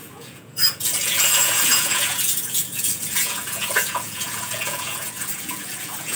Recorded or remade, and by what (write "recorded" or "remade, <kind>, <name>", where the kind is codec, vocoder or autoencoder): remade, vocoder, Vocos